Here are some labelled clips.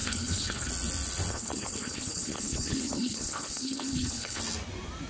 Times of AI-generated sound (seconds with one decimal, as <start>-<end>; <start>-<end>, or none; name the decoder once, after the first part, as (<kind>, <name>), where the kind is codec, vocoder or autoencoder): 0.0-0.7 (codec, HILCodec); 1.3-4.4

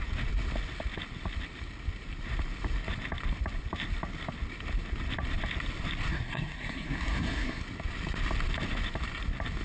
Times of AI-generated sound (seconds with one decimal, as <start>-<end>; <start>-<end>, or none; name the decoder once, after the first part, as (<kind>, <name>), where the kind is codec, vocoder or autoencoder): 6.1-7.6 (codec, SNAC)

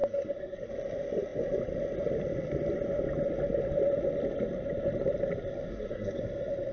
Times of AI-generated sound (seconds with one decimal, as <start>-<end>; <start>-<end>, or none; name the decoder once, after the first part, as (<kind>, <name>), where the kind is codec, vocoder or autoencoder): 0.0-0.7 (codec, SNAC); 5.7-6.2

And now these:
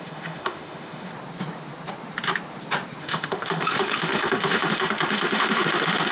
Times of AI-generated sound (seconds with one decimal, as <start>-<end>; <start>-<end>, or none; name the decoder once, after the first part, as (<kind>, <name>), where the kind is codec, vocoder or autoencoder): 0.0-1.1 (autoencoder, DAC-VAE); 3.0-6.1